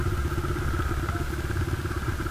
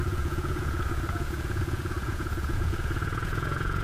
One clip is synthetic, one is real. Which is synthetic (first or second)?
second